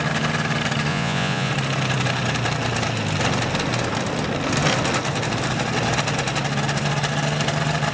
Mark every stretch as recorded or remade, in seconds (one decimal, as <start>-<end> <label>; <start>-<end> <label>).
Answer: 0.0-0.9 recorded; 0.9-1.5 remade; 1.5-7.9 recorded